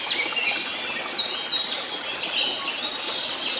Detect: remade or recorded recorded